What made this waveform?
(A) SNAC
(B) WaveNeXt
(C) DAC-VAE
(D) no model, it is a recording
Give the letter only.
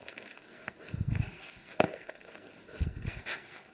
A